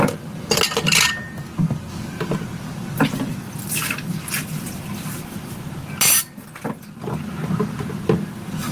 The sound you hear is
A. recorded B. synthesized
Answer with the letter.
A